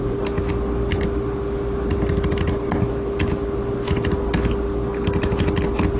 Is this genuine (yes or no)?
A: yes